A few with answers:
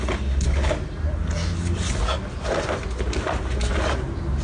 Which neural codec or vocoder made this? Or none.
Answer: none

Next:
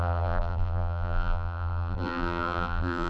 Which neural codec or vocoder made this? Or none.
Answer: vocoder, BigVGAN v2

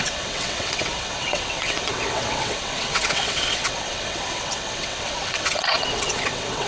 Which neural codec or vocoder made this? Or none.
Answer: vocoder, WaveNeXt